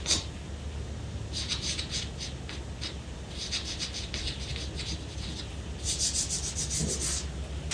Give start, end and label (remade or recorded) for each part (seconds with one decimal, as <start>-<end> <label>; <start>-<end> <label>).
0.0-7.7 recorded